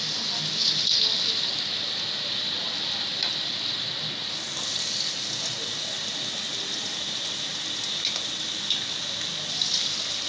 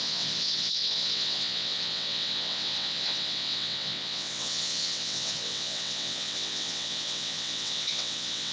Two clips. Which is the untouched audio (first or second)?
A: first